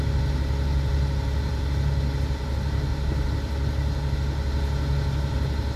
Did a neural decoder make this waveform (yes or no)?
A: no